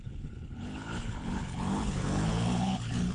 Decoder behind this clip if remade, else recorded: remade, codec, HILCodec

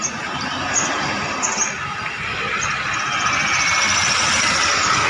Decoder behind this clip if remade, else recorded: recorded